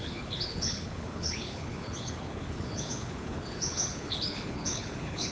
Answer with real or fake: fake